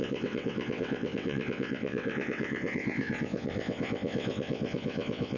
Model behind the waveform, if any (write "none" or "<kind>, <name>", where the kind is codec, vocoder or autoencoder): vocoder, WaveNeXt